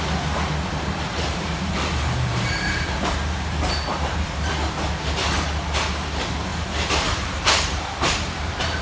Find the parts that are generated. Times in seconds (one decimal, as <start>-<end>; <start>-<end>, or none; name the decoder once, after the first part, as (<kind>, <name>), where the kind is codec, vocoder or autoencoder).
1.1-4.5 (vocoder, BigVGAN v2); 6.5-8.8